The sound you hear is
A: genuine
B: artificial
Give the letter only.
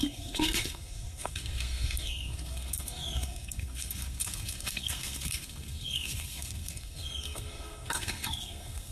B